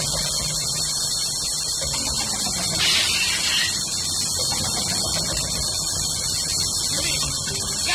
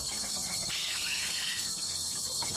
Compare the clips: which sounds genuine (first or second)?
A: first